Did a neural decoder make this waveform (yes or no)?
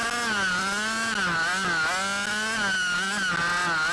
no